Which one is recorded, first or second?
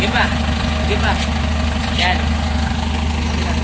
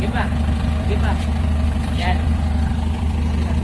first